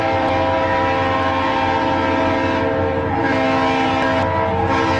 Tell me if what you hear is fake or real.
real